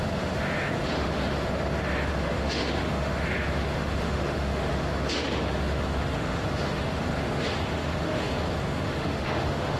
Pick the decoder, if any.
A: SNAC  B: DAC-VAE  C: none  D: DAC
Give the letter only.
B